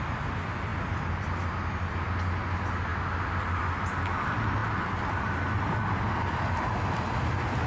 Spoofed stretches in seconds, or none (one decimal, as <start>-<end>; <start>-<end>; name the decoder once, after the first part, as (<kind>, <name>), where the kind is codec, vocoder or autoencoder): none